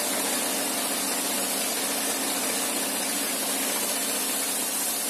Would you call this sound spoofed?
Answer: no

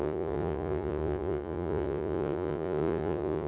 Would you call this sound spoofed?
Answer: yes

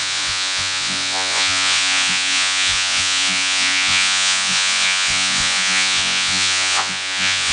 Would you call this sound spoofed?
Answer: yes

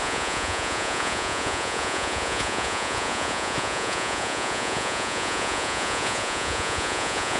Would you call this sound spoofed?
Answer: yes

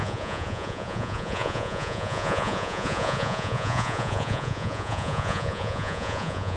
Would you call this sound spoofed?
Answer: yes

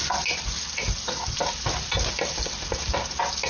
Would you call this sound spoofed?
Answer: no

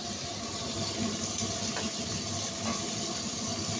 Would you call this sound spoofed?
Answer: no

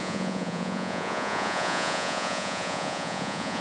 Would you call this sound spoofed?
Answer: yes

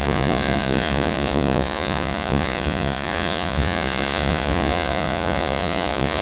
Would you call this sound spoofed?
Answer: yes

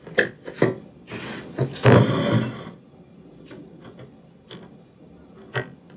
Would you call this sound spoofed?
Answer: no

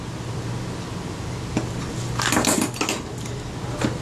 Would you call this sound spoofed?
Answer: no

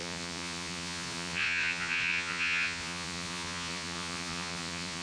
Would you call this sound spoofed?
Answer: yes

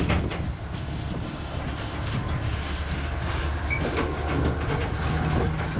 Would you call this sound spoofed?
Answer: no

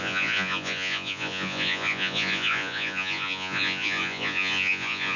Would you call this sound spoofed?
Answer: yes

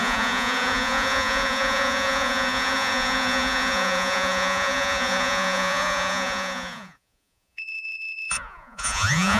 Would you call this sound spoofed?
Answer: yes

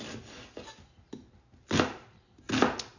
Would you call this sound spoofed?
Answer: no